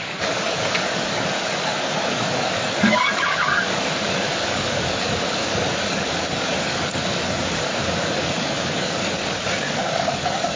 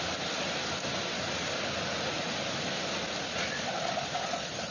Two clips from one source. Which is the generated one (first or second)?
first